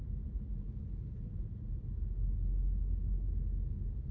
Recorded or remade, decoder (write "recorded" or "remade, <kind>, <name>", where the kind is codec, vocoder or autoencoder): recorded